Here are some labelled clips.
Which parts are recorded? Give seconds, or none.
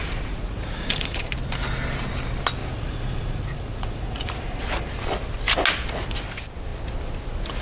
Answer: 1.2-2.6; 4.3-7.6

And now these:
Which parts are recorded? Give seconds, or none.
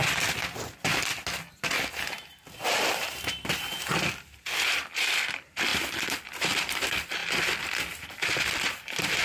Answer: 0.0-3.1; 7.2-8.6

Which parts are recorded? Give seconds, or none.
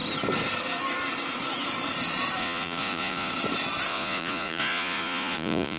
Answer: 0.0-2.4; 3.3-3.9